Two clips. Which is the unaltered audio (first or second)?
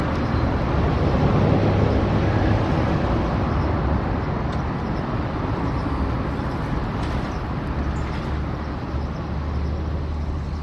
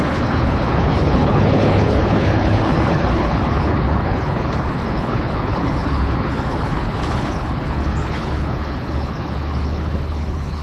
first